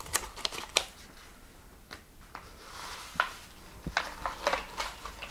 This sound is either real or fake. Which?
real